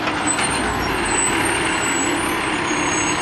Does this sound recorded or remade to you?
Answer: recorded